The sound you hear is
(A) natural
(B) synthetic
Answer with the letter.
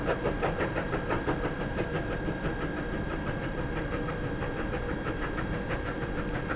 A